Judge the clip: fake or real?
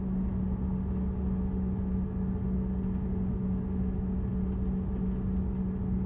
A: real